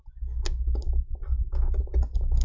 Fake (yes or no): no